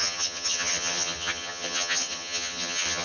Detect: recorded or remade remade